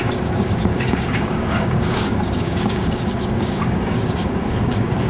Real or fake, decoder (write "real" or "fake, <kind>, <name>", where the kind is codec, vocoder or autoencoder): fake, codec, DAC